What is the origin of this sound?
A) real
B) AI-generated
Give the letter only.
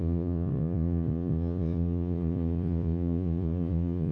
B